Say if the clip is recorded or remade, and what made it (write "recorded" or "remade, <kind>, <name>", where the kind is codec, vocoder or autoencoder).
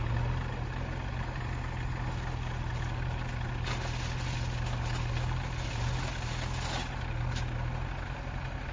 recorded